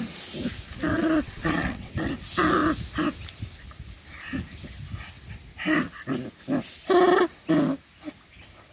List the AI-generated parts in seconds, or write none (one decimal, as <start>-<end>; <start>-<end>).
0.9-2.1